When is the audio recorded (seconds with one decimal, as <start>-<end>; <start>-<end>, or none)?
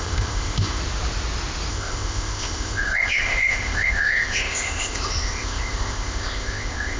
0.8-1.7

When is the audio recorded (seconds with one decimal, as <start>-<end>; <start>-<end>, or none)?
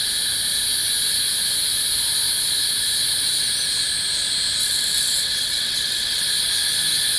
0.0-4.6; 6.2-7.2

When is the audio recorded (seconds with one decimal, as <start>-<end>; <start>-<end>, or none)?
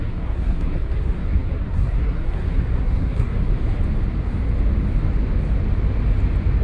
3.5-6.6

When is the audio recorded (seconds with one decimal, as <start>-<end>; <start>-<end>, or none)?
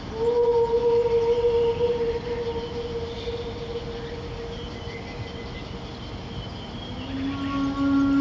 0.0-8.2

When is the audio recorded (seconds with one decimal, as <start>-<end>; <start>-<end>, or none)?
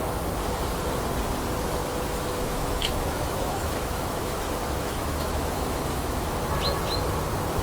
0.0-1.8; 6.4-7.6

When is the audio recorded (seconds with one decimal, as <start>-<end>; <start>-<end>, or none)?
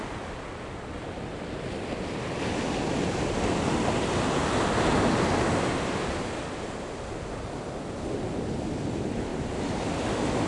0.0-9.3; 9.9-10.5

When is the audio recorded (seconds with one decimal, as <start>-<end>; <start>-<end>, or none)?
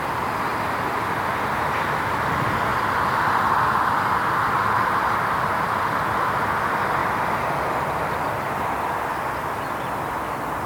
0.0-0.5; 1.2-2.7; 3.8-10.7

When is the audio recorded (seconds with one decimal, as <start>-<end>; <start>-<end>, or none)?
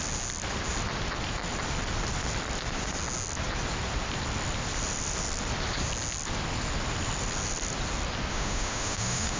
0.0-8.3